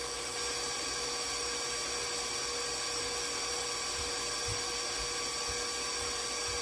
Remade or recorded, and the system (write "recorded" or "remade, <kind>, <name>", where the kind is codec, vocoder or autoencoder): recorded